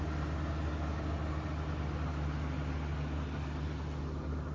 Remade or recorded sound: recorded